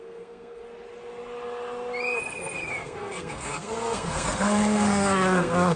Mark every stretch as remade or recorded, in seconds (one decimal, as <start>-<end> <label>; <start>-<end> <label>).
0.0-0.6 remade; 0.6-2.8 recorded; 2.8-5.8 remade